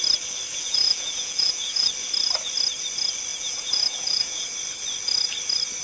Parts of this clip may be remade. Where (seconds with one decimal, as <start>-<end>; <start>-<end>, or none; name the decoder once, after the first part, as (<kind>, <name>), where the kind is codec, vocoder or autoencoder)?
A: 0.5-1.9 (vocoder, Vocos); 3.3-4.5